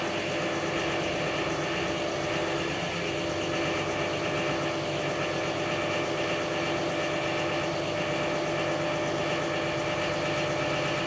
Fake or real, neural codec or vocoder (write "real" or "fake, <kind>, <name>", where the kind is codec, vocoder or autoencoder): real